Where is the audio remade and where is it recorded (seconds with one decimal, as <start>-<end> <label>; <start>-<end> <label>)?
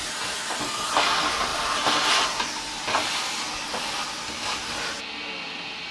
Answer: 0.0-5.9 recorded